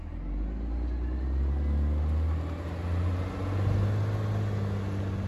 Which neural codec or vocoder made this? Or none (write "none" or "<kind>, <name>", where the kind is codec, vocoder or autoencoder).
none